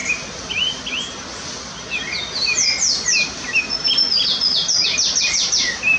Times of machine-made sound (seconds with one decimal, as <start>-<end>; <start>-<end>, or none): none

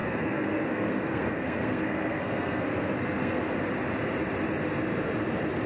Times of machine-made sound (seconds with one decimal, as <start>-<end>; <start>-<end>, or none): 0.0-3.4

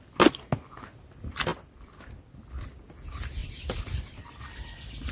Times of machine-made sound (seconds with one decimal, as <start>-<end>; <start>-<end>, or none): 1.5-2.8; 3.4-4.4

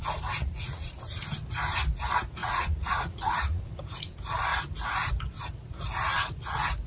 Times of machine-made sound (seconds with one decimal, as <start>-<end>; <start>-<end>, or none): 0.4-0.9; 2.4-3.8

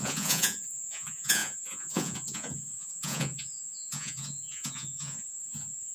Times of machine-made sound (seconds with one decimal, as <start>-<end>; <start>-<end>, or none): 0.0-5.9

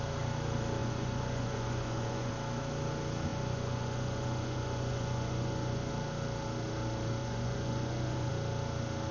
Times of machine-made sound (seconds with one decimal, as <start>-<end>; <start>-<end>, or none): 0.8-2.3; 3.3-5.9; 7.2-8.3

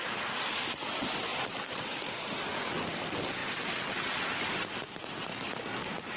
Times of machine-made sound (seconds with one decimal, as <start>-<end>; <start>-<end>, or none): 1.3-2.3; 3.4-4.0